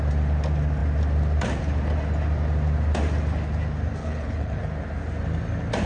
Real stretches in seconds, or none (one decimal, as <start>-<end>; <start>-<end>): 0.0-4.0; 4.6-5.9